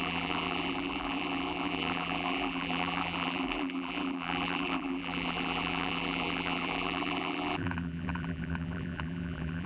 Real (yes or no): no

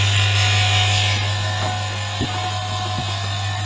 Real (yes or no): yes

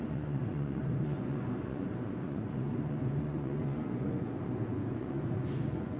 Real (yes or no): no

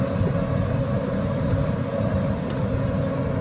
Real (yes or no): yes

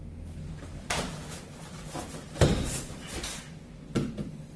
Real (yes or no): yes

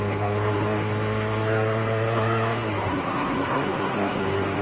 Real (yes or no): no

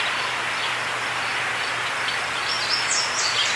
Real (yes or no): yes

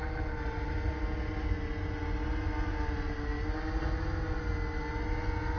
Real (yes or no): yes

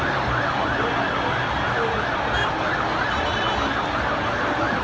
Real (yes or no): yes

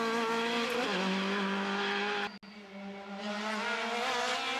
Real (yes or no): yes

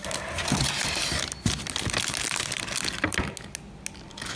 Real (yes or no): yes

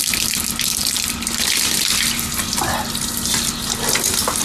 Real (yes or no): yes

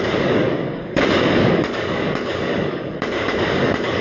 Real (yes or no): no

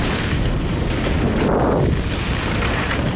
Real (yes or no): yes